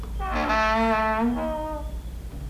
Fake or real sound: real